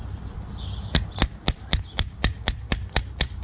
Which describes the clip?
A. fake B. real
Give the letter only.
B